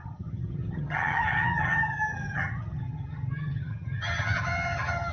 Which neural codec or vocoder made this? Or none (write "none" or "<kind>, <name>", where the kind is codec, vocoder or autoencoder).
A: vocoder, HiFi-GAN